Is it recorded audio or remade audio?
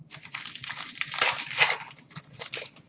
remade